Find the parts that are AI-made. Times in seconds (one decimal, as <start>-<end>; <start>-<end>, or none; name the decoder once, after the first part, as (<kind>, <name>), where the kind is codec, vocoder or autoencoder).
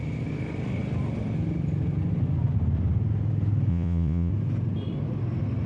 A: 3.7-4.3 (vocoder, Vocos)